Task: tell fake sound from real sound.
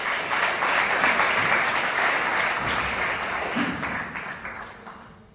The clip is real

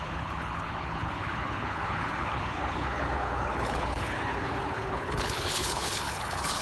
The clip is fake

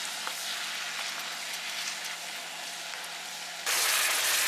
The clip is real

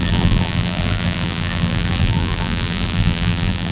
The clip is fake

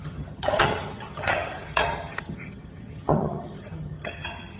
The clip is fake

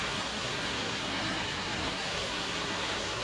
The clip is fake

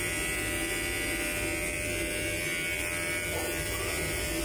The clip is real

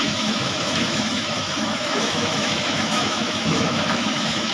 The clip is fake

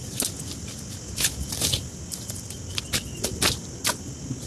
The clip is real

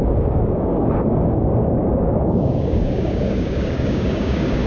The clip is fake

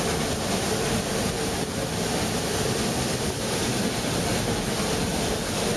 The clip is real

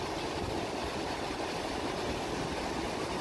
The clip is real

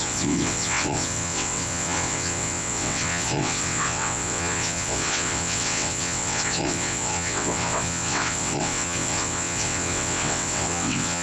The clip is fake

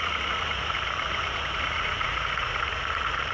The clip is fake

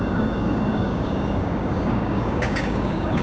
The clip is fake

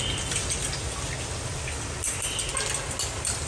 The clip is real